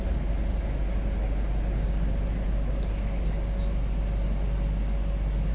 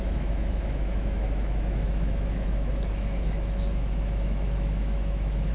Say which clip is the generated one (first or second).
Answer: second